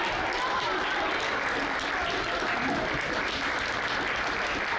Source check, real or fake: real